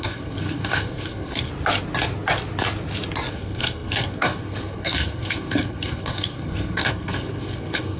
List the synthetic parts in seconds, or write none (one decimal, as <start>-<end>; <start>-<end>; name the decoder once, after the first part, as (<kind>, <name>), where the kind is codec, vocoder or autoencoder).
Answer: 0.0-1.5 (codec, SNAC); 3.3-8.0